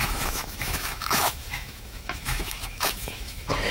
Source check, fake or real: fake